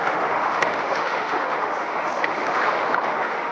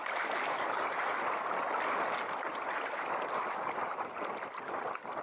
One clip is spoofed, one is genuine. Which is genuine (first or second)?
second